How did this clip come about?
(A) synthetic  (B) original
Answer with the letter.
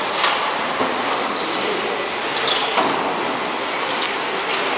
B